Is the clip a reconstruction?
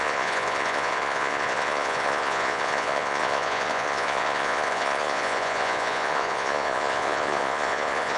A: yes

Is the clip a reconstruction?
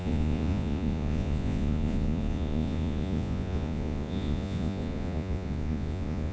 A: yes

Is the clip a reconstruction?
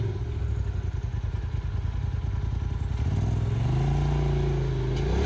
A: no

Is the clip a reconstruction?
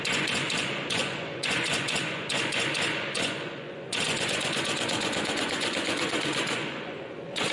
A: yes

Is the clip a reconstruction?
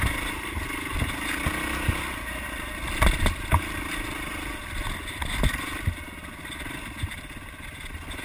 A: no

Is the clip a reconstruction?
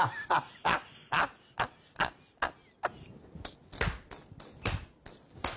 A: no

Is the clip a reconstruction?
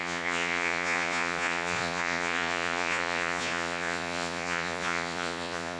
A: yes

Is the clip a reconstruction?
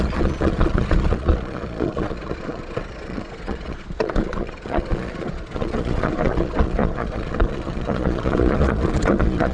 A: yes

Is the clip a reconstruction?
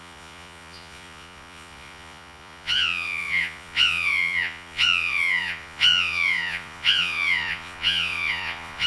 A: yes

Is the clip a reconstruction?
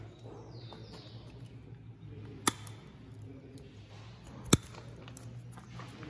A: no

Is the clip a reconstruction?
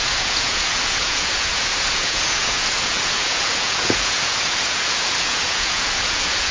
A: yes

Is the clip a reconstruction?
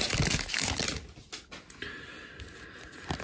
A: no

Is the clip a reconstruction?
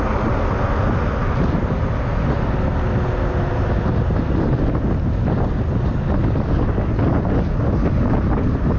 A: no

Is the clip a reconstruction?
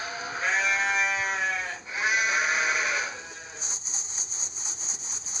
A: no